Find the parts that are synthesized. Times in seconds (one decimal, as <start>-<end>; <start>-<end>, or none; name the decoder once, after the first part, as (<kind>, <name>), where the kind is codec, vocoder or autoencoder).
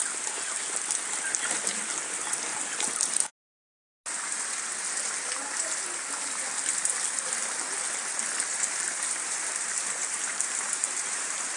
8.5-11.6 (vocoder, BigVGAN v2)